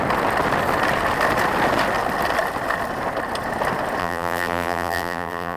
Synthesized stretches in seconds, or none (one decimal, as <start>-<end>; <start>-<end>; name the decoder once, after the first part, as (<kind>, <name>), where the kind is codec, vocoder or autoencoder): 4.0-5.6 (vocoder, BigVGAN v2)